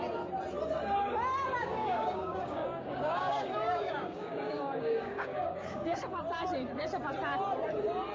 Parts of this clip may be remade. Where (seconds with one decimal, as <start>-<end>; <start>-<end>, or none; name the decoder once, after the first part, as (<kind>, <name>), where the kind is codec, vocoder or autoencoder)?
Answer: 1.6-6.0 (codec, DAC)